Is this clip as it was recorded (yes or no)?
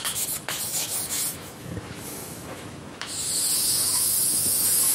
no